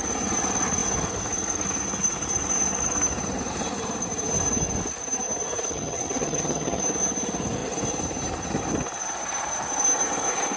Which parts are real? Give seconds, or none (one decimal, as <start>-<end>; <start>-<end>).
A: 0.0-5.7; 6.8-10.6